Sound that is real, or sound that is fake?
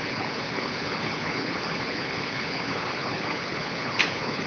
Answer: fake